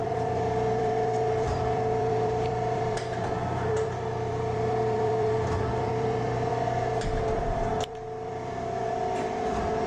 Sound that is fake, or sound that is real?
fake